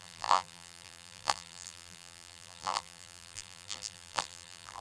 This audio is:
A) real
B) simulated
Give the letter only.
B